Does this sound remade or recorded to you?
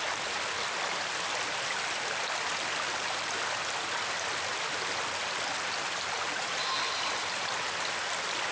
recorded